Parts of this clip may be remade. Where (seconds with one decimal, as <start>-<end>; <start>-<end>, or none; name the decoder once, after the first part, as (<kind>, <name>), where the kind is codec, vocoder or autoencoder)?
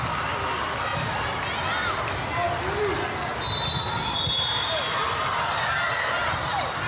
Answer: none